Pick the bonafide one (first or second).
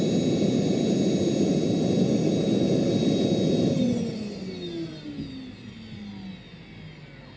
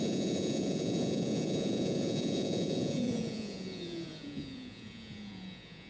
first